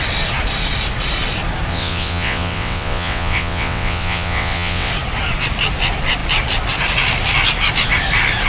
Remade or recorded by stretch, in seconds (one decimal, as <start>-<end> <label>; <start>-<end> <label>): 0.0-1.7 recorded; 1.7-4.9 remade; 4.9-8.5 recorded